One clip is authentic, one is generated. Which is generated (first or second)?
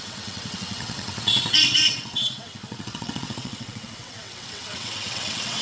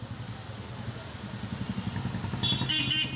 first